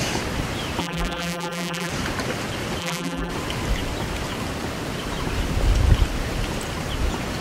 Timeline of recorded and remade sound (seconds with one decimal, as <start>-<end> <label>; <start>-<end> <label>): 0.0-0.8 recorded; 0.8-1.9 remade; 1.9-2.8 recorded; 2.8-3.3 remade; 3.3-7.4 recorded